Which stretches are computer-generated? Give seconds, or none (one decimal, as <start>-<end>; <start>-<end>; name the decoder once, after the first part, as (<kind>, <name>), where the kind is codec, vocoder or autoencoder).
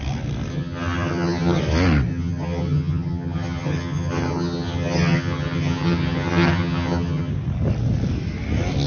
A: 0.5-1.6 (vocoder, HiFi-GAN); 2.1-7.3